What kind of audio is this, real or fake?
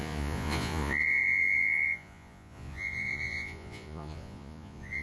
fake